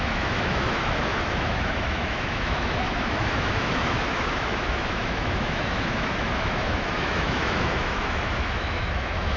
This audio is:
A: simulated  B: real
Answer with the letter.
A